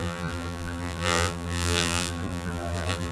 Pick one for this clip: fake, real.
fake